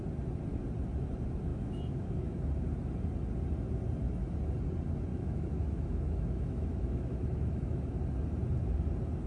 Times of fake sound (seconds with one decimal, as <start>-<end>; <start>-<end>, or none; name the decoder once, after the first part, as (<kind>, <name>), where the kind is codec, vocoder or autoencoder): 1.5-2.5 (autoencoder, DAC-VAE); 5.1-7.9